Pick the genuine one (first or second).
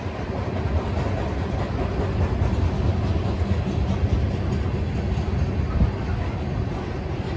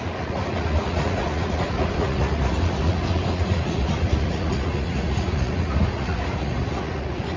first